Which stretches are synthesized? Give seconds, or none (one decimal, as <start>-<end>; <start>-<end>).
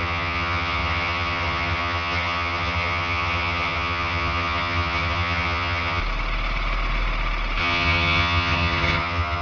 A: 0.0-6.0; 7.6-9.4